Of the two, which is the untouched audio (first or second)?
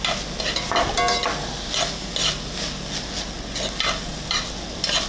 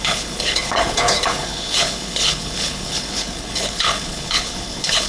first